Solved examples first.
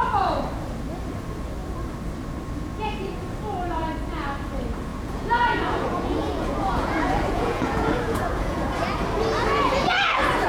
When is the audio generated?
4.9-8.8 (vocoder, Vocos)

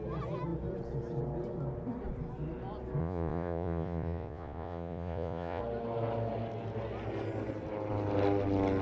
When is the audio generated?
3.0-5.6 (vocoder, Vocos)

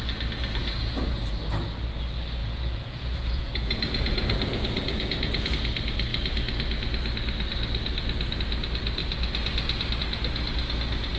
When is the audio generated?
0.6-1.2 (vocoder, Vocos); 2.4-5.5

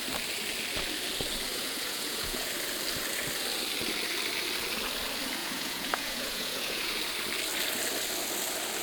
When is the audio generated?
1.5-2.5 (vocoder, Vocos); 5.4-7.0

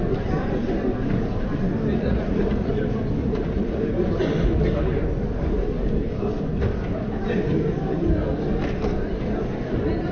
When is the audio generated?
1.9-2.7 (vocoder, Vocos); 3.2-3.8

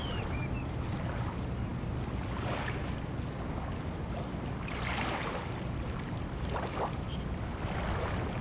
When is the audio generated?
none